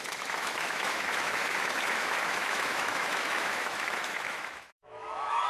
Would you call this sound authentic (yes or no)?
no